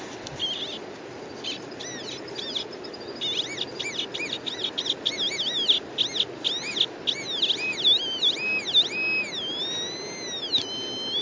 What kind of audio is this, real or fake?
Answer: real